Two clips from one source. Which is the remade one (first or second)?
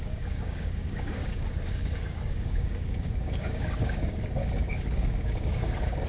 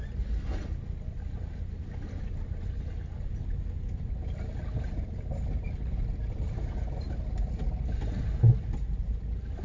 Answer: first